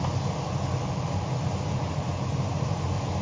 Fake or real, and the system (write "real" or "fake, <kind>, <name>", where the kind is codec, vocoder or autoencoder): real